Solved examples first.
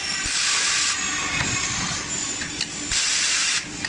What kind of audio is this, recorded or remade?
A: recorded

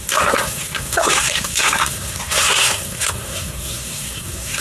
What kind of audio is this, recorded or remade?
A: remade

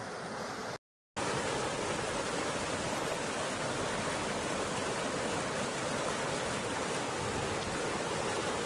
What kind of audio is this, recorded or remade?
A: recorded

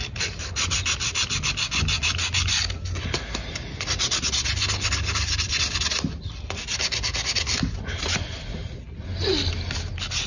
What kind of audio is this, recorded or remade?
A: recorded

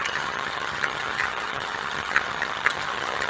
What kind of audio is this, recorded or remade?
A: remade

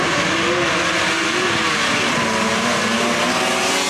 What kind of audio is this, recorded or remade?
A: recorded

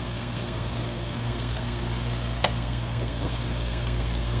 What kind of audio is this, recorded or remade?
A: remade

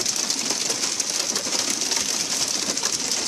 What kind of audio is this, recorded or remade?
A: recorded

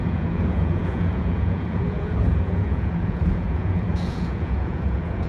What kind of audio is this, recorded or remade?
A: remade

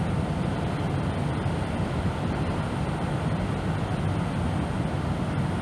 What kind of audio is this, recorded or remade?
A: recorded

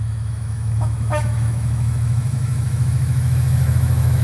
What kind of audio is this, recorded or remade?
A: remade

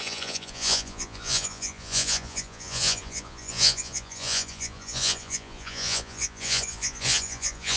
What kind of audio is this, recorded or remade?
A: remade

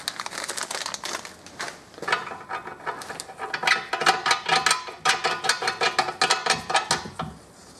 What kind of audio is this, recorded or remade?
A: recorded